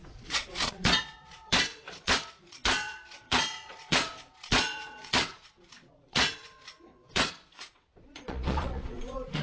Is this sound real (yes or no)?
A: no